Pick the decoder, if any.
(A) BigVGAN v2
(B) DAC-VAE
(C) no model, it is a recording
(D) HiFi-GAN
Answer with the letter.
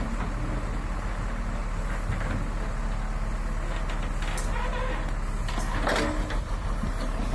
C